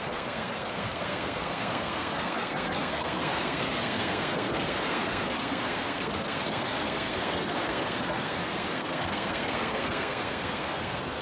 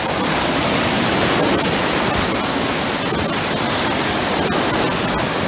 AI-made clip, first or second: first